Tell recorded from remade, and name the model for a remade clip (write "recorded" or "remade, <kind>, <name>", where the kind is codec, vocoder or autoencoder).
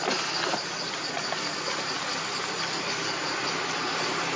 recorded